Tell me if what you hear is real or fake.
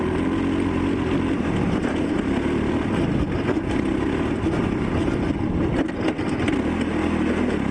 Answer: real